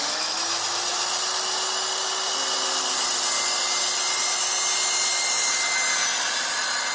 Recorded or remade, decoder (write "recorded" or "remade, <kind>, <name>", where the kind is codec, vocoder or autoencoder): recorded